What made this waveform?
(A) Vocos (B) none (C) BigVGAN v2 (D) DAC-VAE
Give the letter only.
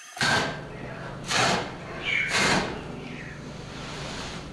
B